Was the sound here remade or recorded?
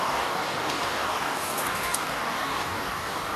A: remade